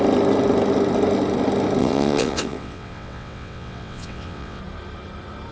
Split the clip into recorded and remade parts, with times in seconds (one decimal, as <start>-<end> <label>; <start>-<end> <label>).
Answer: 0.0-1.8 recorded; 1.8-4.6 remade; 4.6-5.5 recorded